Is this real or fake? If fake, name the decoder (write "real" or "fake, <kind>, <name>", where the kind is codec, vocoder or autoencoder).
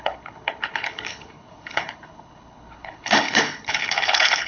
fake, codec, HILCodec